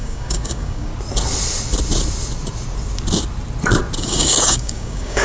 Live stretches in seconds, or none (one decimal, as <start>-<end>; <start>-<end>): 0.9-4.0